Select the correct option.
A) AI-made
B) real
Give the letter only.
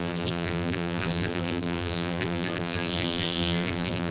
A